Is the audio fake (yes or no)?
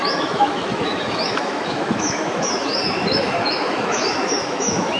yes